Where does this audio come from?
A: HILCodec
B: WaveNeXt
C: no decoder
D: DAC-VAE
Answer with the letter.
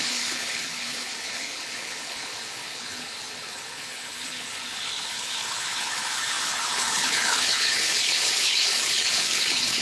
A